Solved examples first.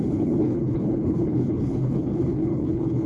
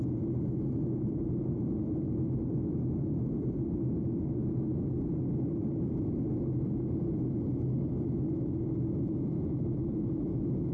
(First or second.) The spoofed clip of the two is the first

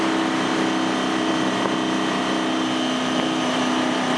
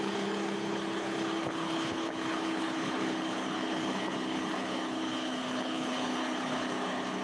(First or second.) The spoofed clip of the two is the second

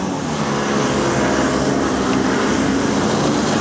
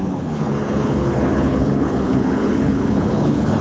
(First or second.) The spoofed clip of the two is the second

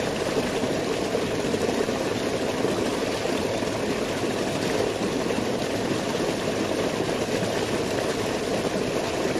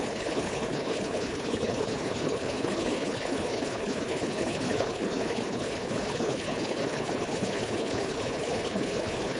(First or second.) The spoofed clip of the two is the second